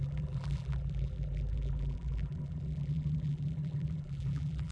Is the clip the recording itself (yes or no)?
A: no